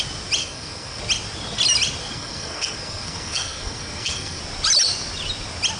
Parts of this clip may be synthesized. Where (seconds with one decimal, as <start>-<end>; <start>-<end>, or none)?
0.4-1.0; 2.0-4.4

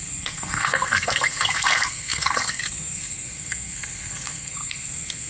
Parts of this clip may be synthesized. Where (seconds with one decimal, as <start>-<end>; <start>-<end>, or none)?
0.0-5.3

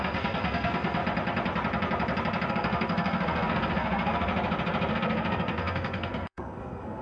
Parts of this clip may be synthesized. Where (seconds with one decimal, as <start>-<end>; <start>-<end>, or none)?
0.0-1.0; 2.5-4.3; 4.9-7.0

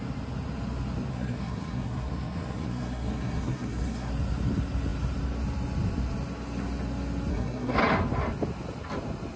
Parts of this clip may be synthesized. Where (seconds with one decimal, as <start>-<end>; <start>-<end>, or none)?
1.1-4.1; 7.3-7.8

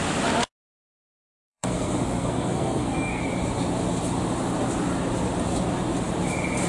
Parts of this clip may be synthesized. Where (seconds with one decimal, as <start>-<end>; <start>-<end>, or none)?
0.7-3.2